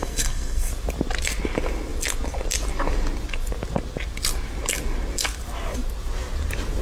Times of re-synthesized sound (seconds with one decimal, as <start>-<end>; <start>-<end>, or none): 0.0-0.7